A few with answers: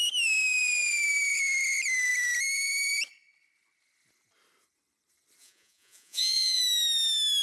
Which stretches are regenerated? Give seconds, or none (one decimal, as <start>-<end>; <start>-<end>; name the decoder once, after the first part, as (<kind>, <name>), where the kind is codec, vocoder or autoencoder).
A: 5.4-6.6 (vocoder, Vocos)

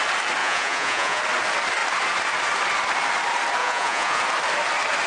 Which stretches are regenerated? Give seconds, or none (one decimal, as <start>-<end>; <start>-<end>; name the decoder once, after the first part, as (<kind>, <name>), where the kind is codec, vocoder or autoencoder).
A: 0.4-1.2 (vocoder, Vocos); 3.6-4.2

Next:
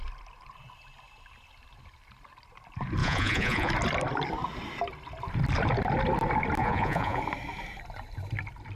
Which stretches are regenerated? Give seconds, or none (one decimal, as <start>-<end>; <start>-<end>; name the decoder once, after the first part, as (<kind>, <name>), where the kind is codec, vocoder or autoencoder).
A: 3.0-3.7 (vocoder, Vocos); 6.6-7.2

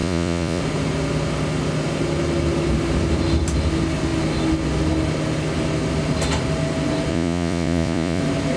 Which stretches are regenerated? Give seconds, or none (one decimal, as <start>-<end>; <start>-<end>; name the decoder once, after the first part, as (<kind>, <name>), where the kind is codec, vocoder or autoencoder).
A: 0.0-0.6 (vocoder, Vocos); 7.1-8.2

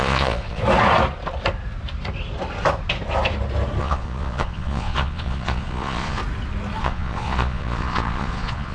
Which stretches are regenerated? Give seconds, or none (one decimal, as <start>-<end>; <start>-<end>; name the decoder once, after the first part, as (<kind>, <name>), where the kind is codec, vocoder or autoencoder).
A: 0.0-0.6 (vocoder, Vocos); 3.8-6.2; 6.8-8.7